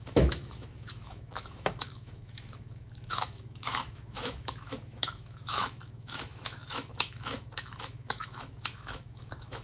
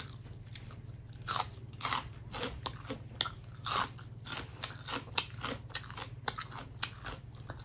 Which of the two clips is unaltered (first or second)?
second